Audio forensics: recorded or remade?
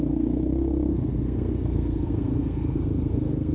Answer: remade